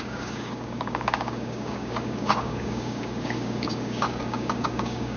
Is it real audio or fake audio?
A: fake